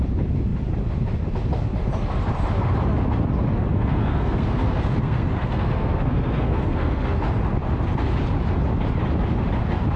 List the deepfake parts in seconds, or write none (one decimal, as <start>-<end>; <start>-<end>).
3.7-7.2